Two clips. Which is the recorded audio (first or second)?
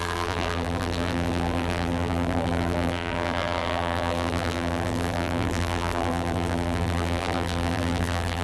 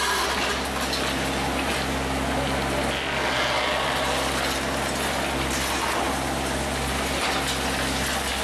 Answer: second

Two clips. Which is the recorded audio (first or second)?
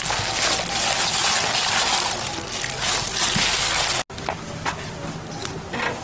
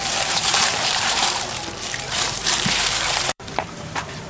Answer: first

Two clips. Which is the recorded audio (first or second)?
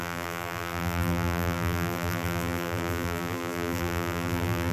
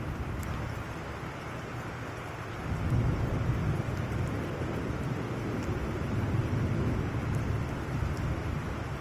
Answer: second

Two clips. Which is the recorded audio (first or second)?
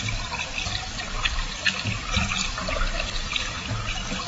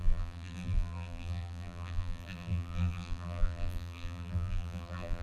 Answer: first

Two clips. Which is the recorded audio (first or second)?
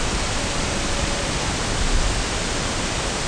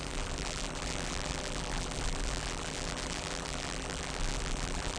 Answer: first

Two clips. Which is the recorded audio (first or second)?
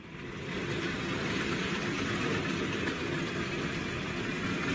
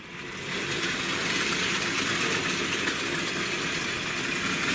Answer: second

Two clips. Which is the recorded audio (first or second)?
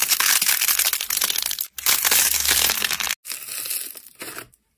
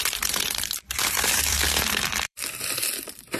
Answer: first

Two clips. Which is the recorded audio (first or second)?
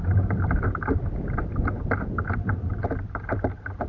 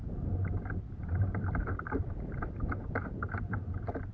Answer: first